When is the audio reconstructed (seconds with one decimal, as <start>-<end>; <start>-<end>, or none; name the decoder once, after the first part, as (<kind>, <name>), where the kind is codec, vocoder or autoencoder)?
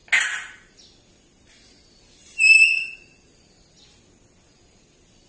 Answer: none